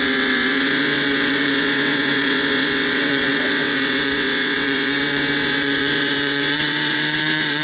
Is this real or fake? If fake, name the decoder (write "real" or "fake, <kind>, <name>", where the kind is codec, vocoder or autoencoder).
fake, vocoder, WaveNeXt